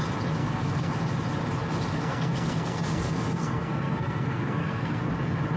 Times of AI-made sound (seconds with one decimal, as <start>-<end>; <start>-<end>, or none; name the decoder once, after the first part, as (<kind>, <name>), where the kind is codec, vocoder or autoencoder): 0.4-0.9 (codec, SNAC); 1.9-5.0